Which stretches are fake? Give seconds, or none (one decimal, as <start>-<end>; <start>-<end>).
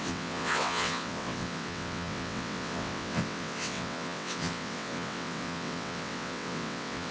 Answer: 0.0-7.1